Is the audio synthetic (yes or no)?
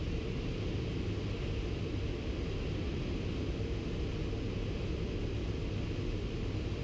no